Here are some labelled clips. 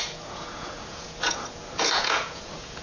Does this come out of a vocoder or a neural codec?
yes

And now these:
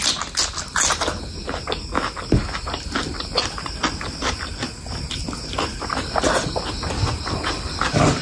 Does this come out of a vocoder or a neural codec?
no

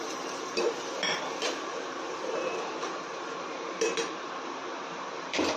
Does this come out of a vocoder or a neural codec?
yes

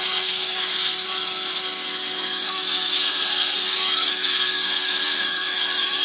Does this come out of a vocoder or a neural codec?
yes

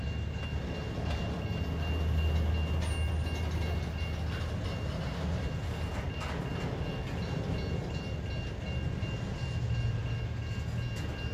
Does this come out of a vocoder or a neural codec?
no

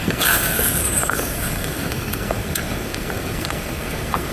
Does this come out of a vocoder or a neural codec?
yes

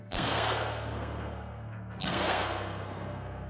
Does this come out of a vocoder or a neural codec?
yes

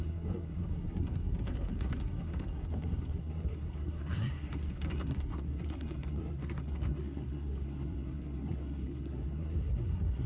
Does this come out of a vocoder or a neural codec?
yes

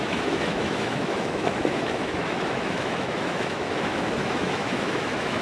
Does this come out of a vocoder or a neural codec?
yes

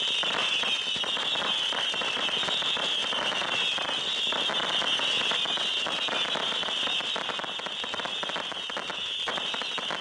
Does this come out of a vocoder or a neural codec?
no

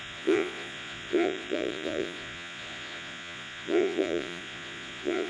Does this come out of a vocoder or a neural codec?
yes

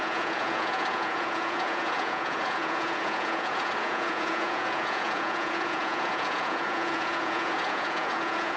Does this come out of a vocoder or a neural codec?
yes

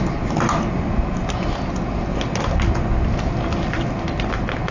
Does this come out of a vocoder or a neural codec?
no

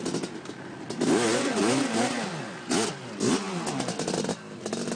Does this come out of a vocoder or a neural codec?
no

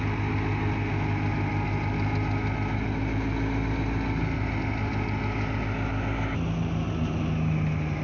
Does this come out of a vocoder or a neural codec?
no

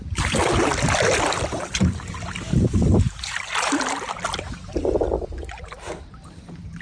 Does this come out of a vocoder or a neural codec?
no